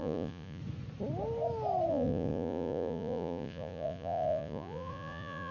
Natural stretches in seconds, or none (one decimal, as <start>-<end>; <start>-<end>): 0.6-1.9